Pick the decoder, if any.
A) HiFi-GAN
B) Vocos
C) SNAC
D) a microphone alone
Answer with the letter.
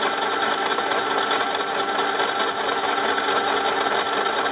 D